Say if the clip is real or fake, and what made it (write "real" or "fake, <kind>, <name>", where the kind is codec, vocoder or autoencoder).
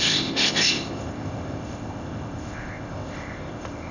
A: fake, codec, ZipCodec